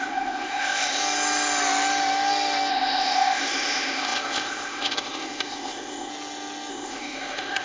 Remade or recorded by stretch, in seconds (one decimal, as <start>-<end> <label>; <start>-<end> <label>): 0.0-1.0 remade; 1.0-2.7 recorded; 2.7-6.1 remade; 6.1-6.7 recorded; 6.7-7.6 remade